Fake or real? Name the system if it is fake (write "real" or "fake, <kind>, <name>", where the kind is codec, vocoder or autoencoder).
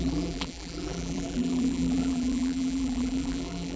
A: fake, vocoder, BigVGAN v2